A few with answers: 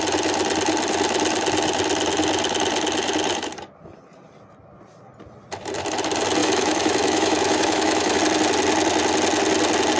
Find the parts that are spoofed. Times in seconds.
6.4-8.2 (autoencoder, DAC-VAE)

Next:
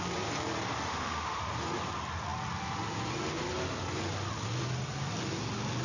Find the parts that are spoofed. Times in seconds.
0.9-1.4 (autoencoder, DAC-VAE)

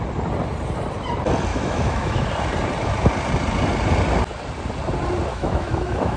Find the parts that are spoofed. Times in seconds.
1.5-2.3 (autoencoder, DAC-VAE); 5.3-6.2

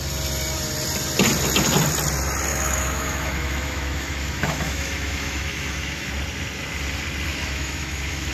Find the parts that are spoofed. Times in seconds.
2.5-6.1 (autoencoder, DAC-VAE); 7.3-8.3

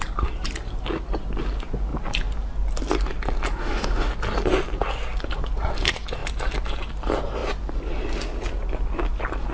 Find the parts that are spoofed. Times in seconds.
3.6-4.1 (autoencoder, DAC-VAE)

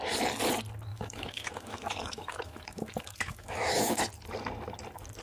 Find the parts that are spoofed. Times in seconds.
0.9-4.0 (autoencoder, DAC-VAE)

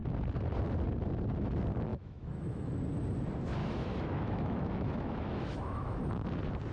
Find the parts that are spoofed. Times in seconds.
1.9-2.7 (autoencoder, DAC-VAE); 3.6-6.0

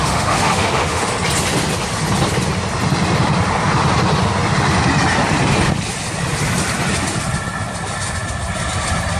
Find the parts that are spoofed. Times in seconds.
0.0-1.1 (autoencoder, DAC-VAE)